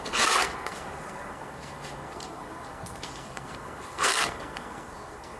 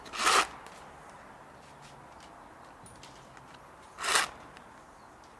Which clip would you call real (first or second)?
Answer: second